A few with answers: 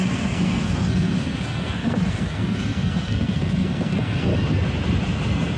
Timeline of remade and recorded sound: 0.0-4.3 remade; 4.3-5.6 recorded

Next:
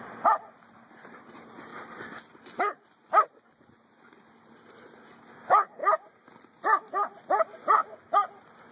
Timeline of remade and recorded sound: 0.0-8.7 recorded